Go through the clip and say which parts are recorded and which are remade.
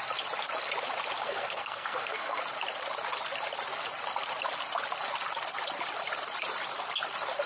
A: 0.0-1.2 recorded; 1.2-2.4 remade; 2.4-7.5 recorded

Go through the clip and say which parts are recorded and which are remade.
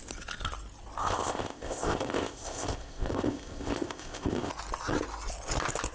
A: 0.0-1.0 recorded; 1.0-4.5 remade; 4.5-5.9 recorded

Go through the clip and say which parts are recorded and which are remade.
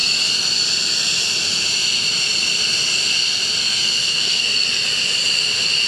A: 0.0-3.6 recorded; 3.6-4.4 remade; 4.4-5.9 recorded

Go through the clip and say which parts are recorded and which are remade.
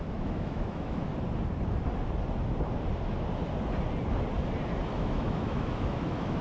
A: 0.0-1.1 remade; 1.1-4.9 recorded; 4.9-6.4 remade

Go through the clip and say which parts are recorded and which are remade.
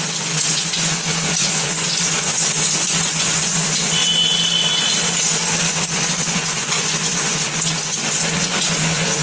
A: 0.0-4.0 remade; 4.0-5.7 recorded; 5.7-9.2 remade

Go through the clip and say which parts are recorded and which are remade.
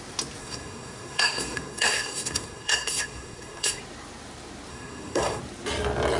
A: 0.0-0.4 recorded; 0.4-3.8 remade; 3.8-4.7 recorded; 4.7-5.4 remade; 5.4-6.2 recorded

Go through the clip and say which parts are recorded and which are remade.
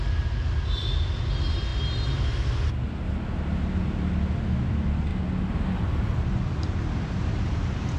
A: 0.0-8.0 recorded